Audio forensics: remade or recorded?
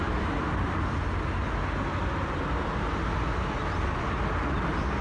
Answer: recorded